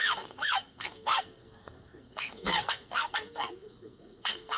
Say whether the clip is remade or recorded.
remade